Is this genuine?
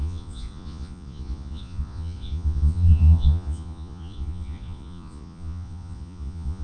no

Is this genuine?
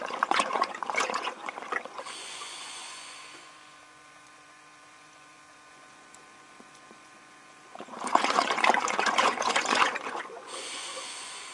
no